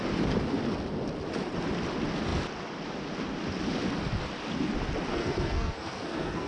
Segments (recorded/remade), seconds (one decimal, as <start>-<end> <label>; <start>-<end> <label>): 0.0-5.1 recorded; 5.1-6.5 remade